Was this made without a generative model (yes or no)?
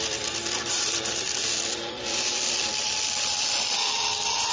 yes